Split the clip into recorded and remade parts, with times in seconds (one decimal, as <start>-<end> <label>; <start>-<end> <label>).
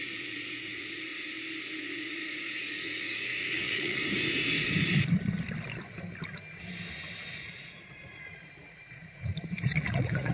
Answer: 0.0-1.1 remade; 1.1-1.8 recorded; 1.8-4.0 remade; 4.0-7.3 recorded; 7.3-10.3 remade